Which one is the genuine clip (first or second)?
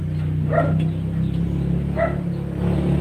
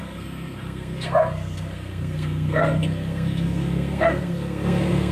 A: first